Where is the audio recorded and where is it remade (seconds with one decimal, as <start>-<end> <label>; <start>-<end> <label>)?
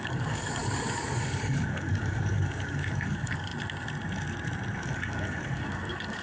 0.0-3.5 remade; 3.5-4.8 recorded; 4.8-6.2 remade